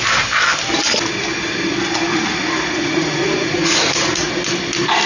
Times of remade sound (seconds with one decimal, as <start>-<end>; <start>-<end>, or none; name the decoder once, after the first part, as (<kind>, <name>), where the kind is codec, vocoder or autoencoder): 2.1-4.3 (vocoder, Vocos)

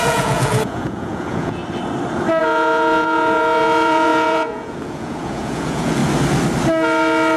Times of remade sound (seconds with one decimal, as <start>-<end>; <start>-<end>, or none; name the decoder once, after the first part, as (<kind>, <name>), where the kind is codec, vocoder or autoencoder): 0.0-1.6 (vocoder, Vocos); 2.4-6.0

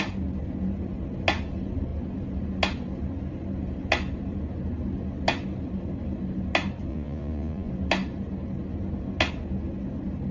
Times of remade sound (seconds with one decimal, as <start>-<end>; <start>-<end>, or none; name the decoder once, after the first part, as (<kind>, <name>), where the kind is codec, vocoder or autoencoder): 6.9-7.7 (vocoder, Vocos)

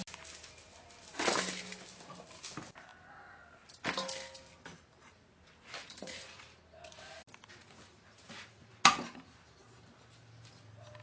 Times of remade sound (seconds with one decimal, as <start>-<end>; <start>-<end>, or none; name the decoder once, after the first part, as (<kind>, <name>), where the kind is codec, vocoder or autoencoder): 5.8-6.4 (vocoder, Vocos); 7.6-8.7

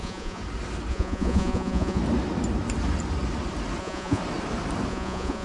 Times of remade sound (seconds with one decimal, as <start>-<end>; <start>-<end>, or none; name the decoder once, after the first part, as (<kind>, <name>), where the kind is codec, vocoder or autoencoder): 0.0-0.4 (vocoder, Vocos); 0.9-2.0; 3.8-4.2; 4.9-5.4

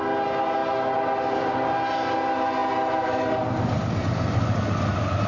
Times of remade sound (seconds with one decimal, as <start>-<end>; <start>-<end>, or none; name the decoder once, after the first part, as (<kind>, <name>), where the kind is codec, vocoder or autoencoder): none

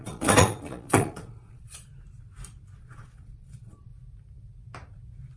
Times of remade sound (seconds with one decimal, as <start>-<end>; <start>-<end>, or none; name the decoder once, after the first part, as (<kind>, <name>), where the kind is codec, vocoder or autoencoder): 0.0-1.9 (vocoder, Vocos); 2.8-3.9

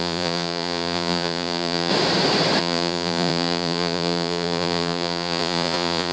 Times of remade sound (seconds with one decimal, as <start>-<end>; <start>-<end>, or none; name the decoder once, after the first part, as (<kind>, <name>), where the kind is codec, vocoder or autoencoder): 0.0-1.9 (vocoder, Vocos); 2.6-6.1